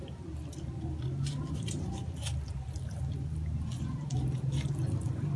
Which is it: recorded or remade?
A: recorded